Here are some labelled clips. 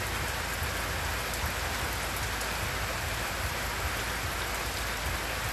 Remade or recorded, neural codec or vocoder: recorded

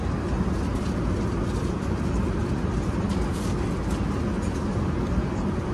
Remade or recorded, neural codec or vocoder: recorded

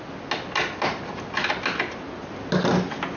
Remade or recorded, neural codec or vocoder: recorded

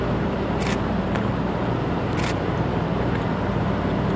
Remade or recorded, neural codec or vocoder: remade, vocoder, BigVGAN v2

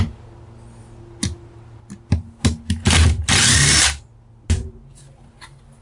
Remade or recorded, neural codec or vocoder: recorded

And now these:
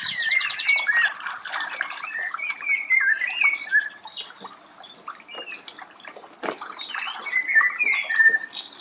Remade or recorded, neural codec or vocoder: recorded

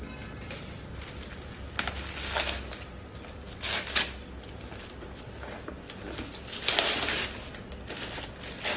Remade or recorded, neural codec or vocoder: recorded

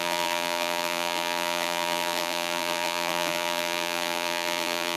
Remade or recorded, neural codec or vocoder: remade, vocoder, BigVGAN v2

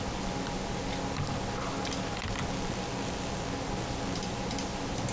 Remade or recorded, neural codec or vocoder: recorded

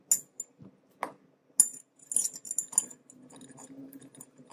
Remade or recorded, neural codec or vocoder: recorded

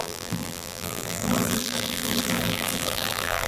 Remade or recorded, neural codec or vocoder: remade, vocoder, BigVGAN v2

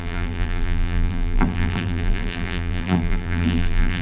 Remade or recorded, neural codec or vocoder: remade, vocoder, BigVGAN v2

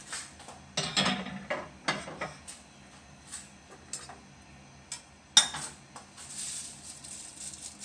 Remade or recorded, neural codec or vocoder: recorded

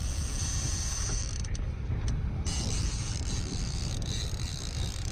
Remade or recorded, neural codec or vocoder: remade, vocoder, BigVGAN v2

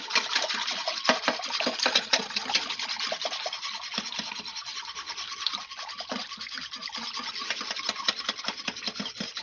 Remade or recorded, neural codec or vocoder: recorded